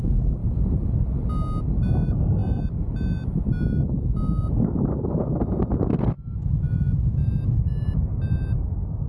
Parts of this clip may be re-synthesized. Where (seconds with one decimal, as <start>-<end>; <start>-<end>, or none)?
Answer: none